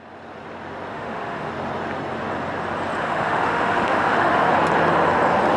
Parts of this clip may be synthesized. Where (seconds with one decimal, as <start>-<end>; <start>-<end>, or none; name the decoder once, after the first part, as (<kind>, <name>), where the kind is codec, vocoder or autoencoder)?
0.9-1.5 (autoencoder, DAC-VAE); 3.0-4.5